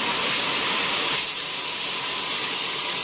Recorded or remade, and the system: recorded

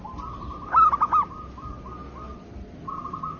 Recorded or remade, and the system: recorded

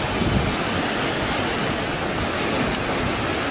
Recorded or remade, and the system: recorded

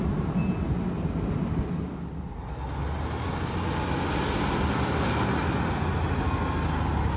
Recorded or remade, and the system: recorded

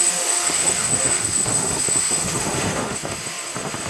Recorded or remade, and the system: remade, autoencoder, DAC-VAE